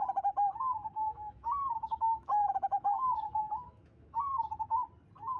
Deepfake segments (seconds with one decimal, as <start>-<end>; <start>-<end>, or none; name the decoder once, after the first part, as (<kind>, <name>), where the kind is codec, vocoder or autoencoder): 1.0-4.2 (autoencoder, DAC-VAE)